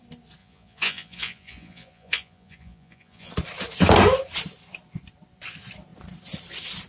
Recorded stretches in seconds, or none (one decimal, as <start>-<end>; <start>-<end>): 0.0-0.4; 3.3-6.9